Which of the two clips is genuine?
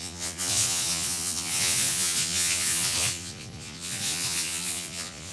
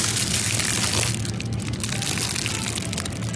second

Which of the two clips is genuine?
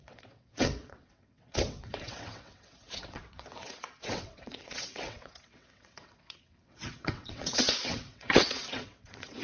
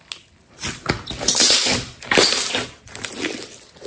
second